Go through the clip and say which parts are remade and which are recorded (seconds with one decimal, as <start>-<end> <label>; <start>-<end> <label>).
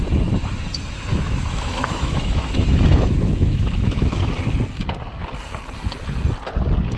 0.0-1.1 recorded; 1.1-4.3 remade; 4.3-7.0 recorded